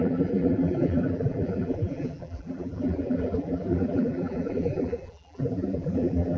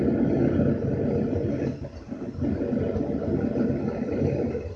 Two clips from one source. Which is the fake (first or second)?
first